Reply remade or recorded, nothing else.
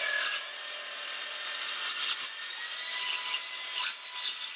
recorded